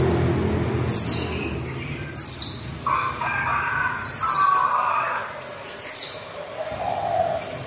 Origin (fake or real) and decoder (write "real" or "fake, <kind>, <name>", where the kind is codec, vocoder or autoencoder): real